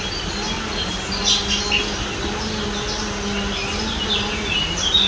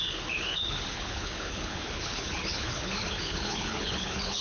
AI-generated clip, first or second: second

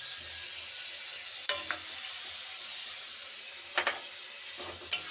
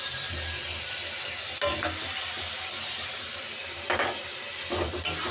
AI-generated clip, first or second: second